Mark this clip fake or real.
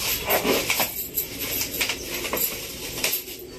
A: real